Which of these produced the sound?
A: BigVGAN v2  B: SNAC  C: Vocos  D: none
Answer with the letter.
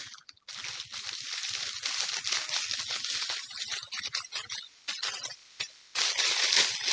D